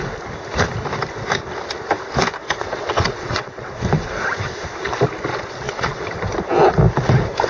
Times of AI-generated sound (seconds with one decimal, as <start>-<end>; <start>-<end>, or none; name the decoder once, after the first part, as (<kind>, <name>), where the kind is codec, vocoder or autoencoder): 2.4-3.7 (vocoder, WaveNeXt); 5.3-6.0